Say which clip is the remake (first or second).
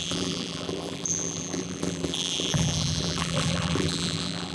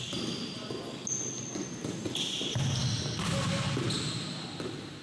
first